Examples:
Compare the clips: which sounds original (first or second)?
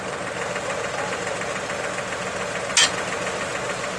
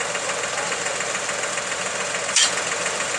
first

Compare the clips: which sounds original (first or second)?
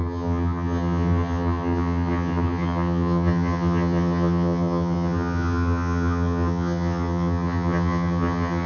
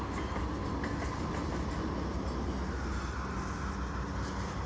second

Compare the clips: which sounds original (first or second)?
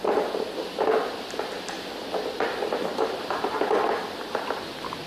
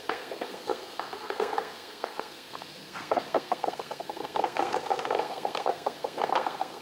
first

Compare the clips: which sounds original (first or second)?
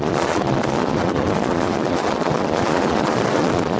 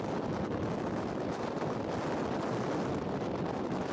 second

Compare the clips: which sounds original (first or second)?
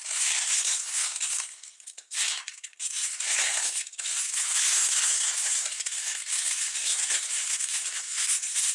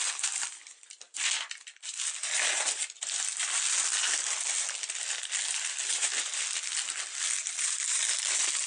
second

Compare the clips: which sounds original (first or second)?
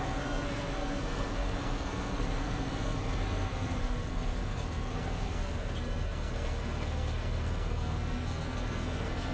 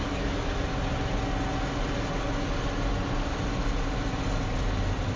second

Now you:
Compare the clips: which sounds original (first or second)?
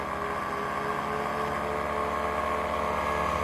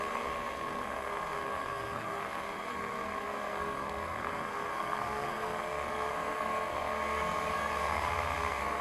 first